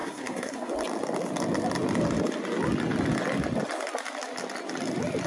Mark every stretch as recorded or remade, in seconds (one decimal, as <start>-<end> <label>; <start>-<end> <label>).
0.0-0.7 remade; 0.7-5.3 recorded